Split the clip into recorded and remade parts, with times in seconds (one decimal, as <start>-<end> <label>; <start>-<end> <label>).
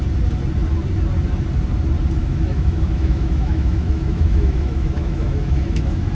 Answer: 0.0-2.2 recorded; 2.2-6.1 remade